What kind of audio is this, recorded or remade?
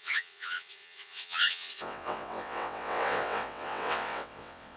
remade